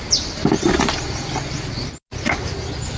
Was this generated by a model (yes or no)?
no